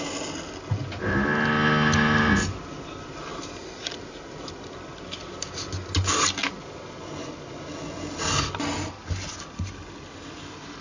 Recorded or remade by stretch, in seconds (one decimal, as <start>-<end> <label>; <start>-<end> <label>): 0.0-10.8 recorded